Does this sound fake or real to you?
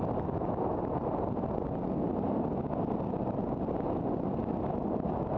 real